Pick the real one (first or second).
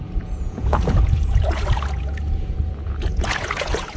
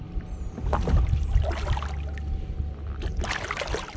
second